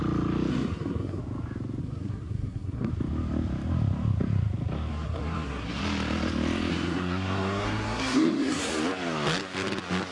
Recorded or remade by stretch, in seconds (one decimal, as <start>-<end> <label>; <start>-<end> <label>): 0.0-0.5 recorded; 0.5-1.2 remade; 1.2-1.8 recorded; 1.8-2.9 remade; 2.9-4.9 recorded; 4.9-5.8 remade; 5.8-6.7 recorded; 6.7-8.7 remade; 8.7-10.1 recorded